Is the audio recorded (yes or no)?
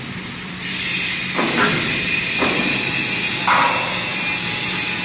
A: no